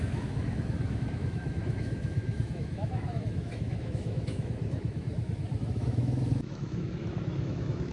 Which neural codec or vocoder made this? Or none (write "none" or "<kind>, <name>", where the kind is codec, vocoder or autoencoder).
autoencoder, DAC-VAE